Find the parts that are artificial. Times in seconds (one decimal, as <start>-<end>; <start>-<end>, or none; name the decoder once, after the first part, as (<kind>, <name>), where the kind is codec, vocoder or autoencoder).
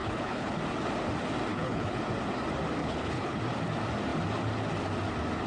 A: 0.0-0.6 (codec, HILCodec); 1.5-2.0; 2.8-3.4